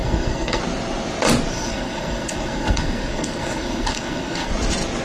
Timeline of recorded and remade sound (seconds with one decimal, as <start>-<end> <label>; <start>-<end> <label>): 0.0-0.6 remade; 0.6-1.5 recorded; 1.5-4.5 remade; 4.5-5.0 recorded